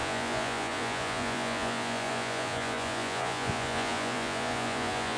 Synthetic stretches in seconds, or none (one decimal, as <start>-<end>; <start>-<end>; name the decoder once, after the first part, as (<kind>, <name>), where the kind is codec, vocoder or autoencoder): 0.0-5.2 (vocoder, Vocos)